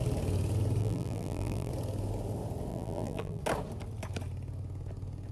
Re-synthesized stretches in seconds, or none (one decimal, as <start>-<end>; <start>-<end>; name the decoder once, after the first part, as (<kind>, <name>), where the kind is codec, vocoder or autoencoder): 0.8-1.7 (vocoder, BigVGAN v2); 2.7-3.4